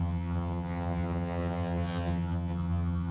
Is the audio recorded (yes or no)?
no